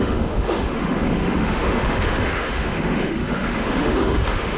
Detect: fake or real fake